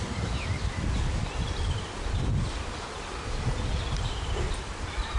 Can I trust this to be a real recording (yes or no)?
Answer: no